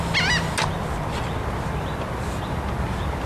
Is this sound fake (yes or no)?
no